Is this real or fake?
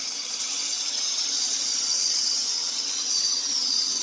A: fake